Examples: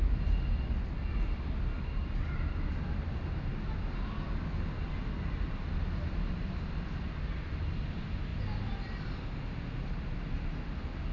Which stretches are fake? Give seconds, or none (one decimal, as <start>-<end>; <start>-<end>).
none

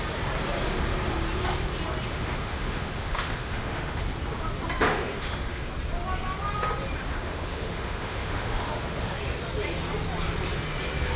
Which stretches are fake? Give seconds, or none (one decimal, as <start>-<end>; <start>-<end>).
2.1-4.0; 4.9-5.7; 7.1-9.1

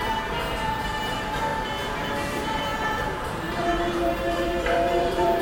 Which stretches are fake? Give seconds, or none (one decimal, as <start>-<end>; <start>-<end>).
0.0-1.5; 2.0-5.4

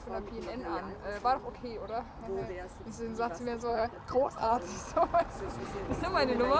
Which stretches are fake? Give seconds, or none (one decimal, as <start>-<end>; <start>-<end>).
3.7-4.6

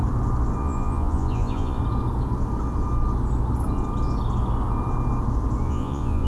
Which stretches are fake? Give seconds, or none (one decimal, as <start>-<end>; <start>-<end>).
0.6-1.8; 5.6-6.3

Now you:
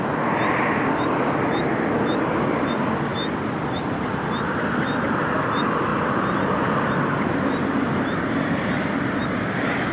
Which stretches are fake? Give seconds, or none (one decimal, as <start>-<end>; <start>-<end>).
3.1-3.6; 5.9-6.6

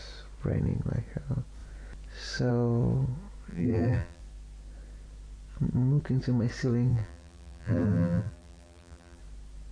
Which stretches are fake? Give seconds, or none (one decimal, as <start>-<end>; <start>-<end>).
3.5-4.2; 6.9-9.2